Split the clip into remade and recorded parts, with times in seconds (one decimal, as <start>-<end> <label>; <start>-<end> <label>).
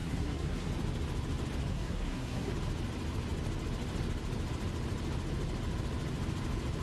0.0-0.7 remade; 0.7-1.7 recorded; 1.7-2.5 remade; 2.5-6.8 recorded